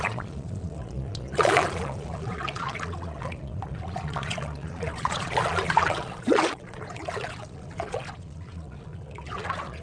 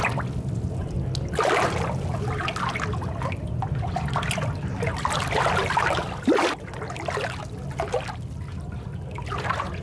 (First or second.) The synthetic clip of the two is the first